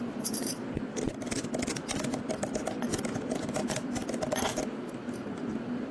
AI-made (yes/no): no